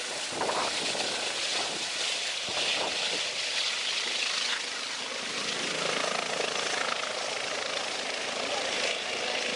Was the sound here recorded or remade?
recorded